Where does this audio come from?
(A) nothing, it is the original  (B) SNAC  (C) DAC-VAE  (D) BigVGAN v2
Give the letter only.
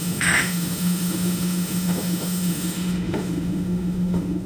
C